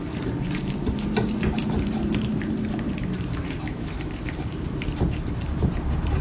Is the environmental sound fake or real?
fake